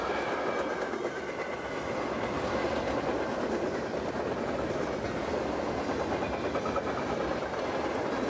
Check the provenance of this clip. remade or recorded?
recorded